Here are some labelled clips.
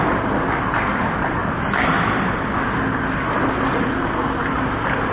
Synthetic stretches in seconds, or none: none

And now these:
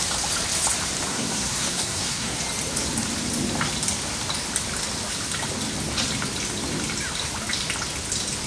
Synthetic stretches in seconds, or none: 1.1-2.4

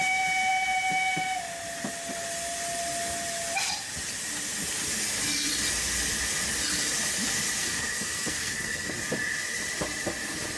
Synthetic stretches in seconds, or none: 7.6-8.9

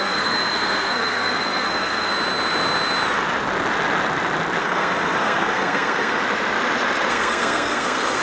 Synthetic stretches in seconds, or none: 0.0-2.1; 4.6-6.2; 7.1-8.2

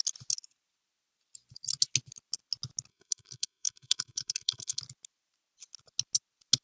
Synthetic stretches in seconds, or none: 2.9-4.8

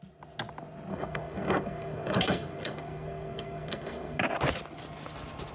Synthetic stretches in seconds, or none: 0.9-4.2

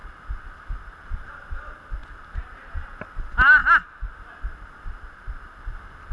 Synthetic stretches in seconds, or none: none